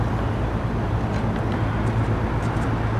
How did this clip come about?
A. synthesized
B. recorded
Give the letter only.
B